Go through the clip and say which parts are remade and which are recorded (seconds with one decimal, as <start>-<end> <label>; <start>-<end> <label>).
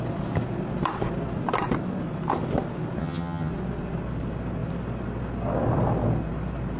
0.0-3.0 recorded; 3.0-3.5 remade; 3.5-6.8 recorded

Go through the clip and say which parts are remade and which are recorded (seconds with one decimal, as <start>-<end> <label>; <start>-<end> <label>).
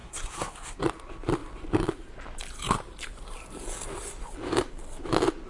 0.0-0.8 remade; 0.8-5.5 recorded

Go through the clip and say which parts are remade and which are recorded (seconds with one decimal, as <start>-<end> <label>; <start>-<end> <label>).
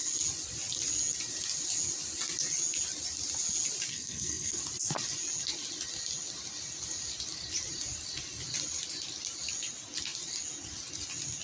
0.0-3.9 recorded; 3.9-4.6 remade; 4.6-11.4 recorded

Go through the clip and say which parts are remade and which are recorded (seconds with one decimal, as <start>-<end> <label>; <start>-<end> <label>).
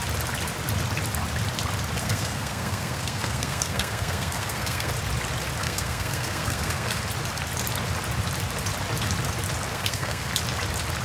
0.0-2.0 recorded; 2.0-4.9 remade; 4.9-5.6 recorded; 5.6-7.0 remade; 7.0-9.7 recorded; 9.7-10.3 remade; 10.3-11.0 recorded